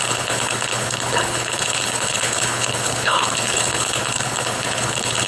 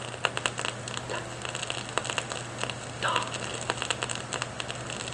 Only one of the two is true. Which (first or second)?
second